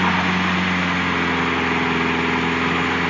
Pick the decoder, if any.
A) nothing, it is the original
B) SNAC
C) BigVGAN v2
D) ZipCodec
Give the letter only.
A